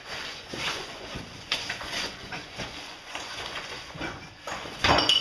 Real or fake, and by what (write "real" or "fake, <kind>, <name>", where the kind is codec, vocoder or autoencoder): fake, vocoder, Vocos